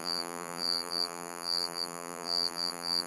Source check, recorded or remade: remade